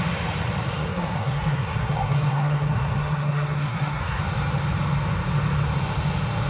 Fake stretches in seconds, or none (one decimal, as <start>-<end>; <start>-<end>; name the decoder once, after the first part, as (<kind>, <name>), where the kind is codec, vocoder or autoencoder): 0.7-4.2 (codec, SNAC)